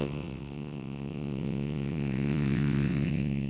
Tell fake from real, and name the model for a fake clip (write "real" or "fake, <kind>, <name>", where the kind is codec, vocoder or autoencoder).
fake, vocoder, WaveNeXt